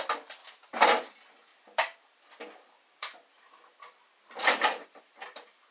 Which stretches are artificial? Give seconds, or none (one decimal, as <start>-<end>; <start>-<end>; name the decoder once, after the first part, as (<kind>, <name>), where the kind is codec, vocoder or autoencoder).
0.4-1.1 (vocoder, BigVGAN v2); 1.5-4.8